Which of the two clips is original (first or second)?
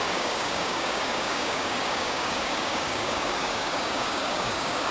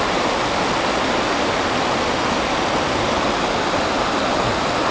second